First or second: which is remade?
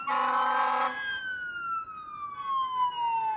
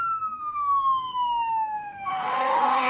second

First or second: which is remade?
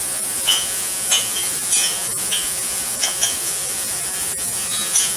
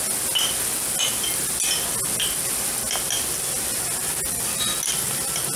first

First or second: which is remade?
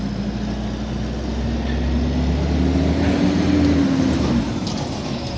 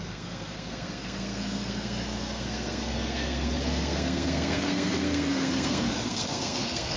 second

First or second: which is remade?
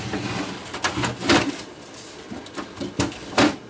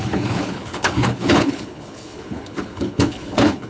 second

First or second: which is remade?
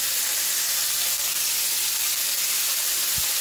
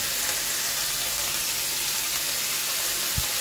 first